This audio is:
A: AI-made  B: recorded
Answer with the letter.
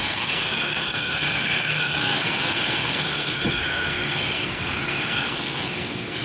A